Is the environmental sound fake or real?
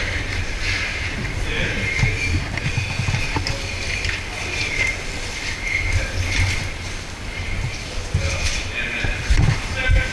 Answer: real